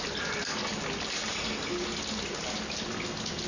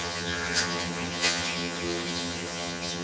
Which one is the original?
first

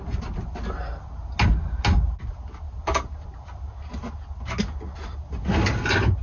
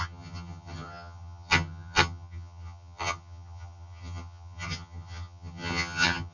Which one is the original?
first